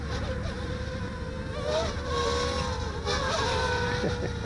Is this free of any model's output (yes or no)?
yes